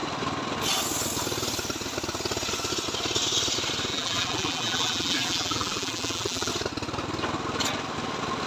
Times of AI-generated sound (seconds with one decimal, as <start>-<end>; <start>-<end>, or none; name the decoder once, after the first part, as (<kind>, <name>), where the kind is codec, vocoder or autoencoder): 3.9-6.5 (vocoder, BigVGAN v2)